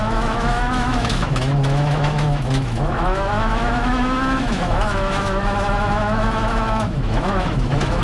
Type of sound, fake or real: fake